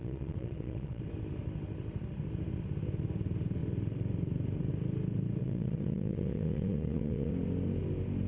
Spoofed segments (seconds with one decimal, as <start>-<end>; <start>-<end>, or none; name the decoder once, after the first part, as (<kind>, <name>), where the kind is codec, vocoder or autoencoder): 0.0-1.0 (vocoder, WaveNeXt); 5.4-7.3

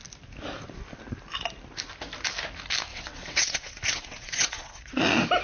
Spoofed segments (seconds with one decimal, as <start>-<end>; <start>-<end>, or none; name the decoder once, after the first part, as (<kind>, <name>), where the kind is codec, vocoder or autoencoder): 2.9-5.0 (vocoder, WaveNeXt)

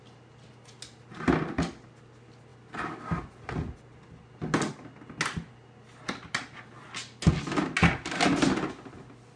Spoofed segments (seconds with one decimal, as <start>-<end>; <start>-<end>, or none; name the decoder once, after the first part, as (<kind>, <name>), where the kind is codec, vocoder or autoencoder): none

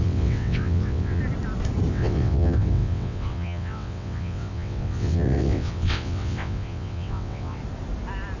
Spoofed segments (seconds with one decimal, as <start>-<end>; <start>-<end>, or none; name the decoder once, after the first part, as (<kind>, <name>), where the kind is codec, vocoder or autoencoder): 0.0-1.2 (vocoder, WaveNeXt); 1.9-7.6

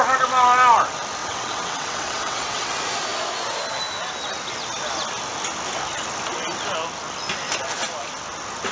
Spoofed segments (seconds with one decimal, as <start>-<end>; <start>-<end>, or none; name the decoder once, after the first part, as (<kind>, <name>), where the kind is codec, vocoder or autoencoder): 1.2-2.7 (vocoder, WaveNeXt)

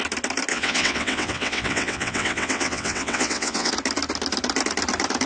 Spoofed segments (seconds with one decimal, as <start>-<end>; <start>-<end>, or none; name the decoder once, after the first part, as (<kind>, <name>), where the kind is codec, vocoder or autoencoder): 0.5-3.7 (vocoder, WaveNeXt)

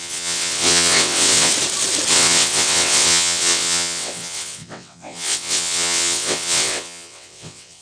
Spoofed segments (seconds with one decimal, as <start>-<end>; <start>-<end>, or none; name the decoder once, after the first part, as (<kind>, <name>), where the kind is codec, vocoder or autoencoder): 0.0-1.5 (vocoder, WaveNeXt); 2.1-7.8